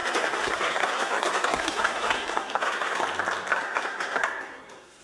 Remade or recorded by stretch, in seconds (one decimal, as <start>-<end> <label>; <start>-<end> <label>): 0.0-3.0 remade; 3.0-3.5 recorded; 3.5-5.0 remade